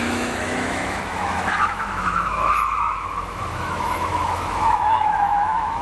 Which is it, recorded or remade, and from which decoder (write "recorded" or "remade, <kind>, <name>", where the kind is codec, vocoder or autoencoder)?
remade, autoencoder, DAC-VAE